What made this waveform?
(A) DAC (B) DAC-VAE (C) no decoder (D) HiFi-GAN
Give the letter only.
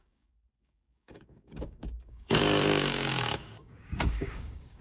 A